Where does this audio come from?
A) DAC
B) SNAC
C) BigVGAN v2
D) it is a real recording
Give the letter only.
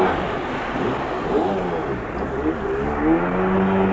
D